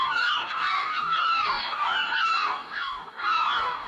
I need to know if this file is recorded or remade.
remade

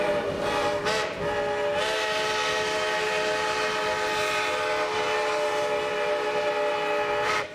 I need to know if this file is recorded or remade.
recorded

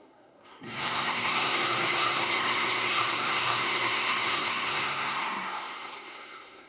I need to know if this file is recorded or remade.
remade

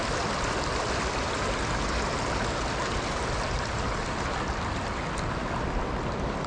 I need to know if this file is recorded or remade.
recorded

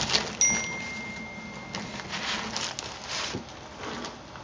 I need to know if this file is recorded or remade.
recorded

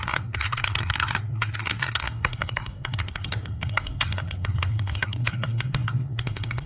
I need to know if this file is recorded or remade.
remade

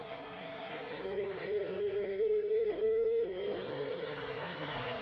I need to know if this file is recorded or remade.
remade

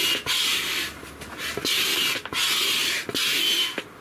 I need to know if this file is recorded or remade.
recorded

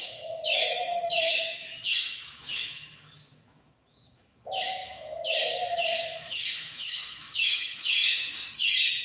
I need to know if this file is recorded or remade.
remade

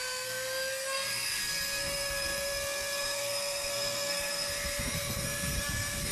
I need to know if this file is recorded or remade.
remade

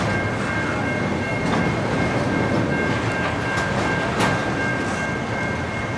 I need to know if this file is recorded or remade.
recorded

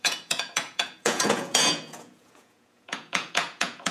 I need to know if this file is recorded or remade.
remade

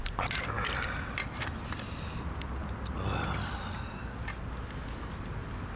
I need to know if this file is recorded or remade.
recorded